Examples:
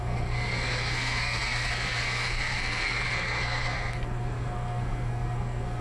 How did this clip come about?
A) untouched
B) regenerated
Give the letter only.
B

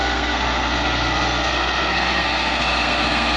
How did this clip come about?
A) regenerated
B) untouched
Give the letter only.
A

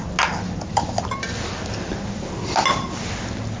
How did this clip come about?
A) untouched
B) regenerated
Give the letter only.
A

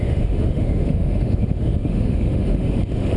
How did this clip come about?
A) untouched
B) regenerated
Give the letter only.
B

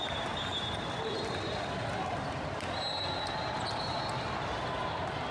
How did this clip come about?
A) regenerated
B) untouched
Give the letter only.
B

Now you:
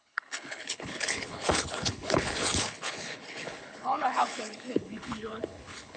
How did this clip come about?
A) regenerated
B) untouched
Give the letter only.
A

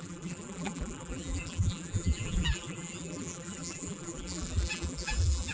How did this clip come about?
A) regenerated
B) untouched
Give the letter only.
A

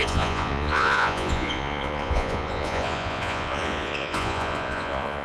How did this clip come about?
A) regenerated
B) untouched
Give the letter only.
A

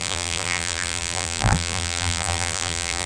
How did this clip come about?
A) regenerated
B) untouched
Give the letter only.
A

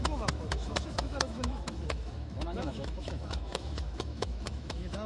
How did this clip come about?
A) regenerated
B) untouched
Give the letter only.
A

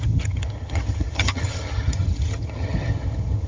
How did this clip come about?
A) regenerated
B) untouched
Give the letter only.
A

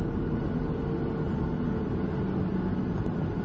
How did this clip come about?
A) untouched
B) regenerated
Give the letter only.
A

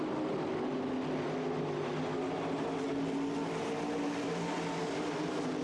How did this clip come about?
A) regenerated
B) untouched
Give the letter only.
B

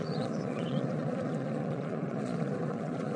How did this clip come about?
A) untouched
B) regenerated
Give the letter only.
B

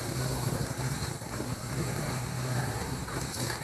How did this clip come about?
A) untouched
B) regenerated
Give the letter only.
B